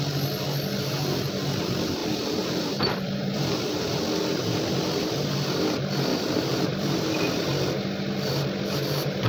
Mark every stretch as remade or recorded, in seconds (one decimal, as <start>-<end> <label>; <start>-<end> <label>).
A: 0.0-2.0 recorded; 2.0-4.0 remade; 4.0-6.1 recorded; 6.1-7.0 remade; 7.0-9.3 recorded